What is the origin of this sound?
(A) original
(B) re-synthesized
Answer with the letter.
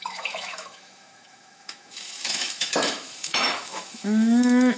B